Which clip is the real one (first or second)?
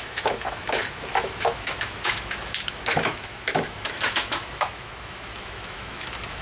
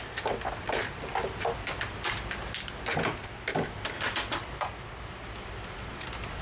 second